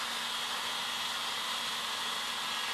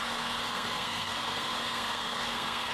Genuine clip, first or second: first